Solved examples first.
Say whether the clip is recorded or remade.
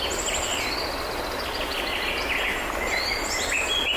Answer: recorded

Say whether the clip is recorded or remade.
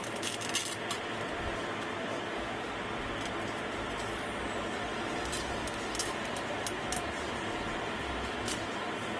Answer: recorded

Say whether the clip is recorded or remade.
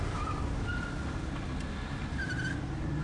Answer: recorded